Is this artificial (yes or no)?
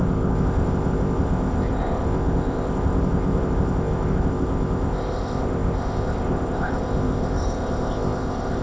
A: yes